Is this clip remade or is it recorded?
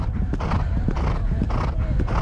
recorded